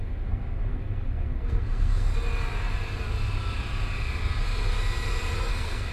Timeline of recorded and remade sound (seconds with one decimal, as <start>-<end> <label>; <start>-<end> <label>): 0.0-2.1 remade; 2.1-5.5 recorded; 5.5-5.9 remade